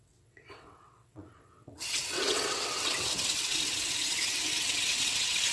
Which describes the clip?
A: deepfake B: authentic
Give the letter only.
A